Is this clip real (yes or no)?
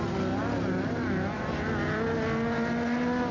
yes